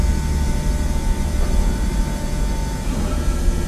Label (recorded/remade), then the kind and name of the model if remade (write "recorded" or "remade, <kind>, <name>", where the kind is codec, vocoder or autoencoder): recorded